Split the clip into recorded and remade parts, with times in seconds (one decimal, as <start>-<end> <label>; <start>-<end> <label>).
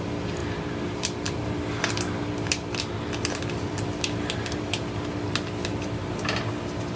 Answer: 0.0-0.4 recorded; 0.4-4.6 remade; 4.6-7.0 recorded